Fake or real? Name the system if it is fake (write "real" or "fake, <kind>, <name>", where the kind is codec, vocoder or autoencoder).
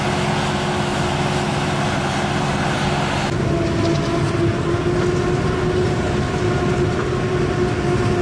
real